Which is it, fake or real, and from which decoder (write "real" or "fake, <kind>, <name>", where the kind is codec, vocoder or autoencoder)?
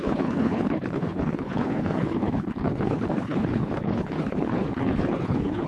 fake, codec, HILCodec